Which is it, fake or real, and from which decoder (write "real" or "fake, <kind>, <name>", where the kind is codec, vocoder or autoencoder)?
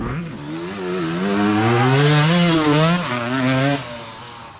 real